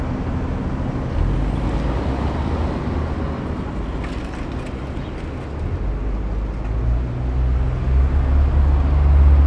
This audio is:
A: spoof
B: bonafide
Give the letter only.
B